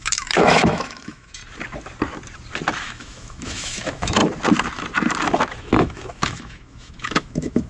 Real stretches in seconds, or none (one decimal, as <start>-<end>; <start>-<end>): 1.4-2.8; 4.2-5.6